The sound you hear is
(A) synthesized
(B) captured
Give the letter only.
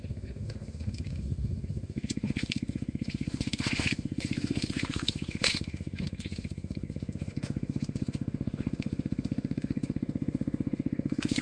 A